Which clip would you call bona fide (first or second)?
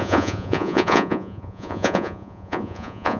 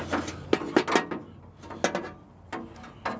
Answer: second